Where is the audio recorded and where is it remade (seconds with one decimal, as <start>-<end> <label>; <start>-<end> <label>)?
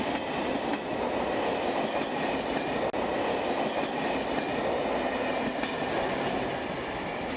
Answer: 0.0-7.4 recorded